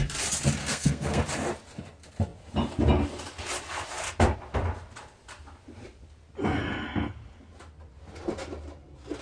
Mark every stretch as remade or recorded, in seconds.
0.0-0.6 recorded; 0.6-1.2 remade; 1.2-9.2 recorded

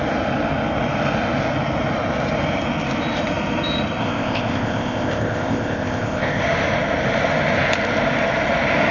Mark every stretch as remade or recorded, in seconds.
0.0-4.0 recorded; 4.0-6.4 remade; 6.4-8.9 recorded

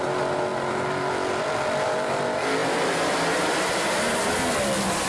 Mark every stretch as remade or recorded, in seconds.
0.0-0.5 recorded; 0.5-2.2 remade; 2.2-2.6 recorded; 2.6-4.3 remade; 4.3-5.1 recorded

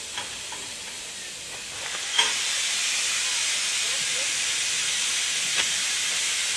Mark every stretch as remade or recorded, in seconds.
0.0-0.6 remade; 0.6-3.8 recorded; 3.8-6.6 remade